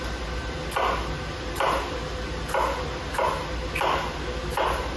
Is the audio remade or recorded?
recorded